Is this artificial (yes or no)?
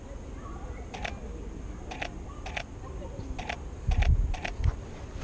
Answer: no